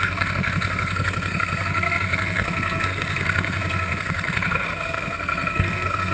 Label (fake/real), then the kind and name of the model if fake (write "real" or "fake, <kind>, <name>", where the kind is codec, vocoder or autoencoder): fake, codec, SNAC